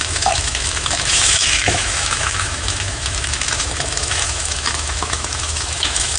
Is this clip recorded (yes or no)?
no